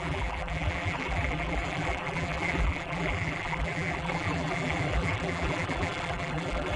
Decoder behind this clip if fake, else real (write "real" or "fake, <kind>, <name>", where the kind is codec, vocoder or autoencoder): fake, vocoder, BigVGAN v2